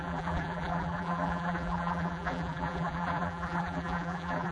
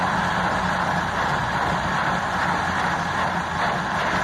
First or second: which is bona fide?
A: second